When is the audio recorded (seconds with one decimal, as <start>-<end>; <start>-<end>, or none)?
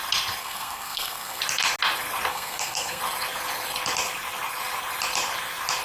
0.0-0.4; 1.4-2.3; 3.0-5.8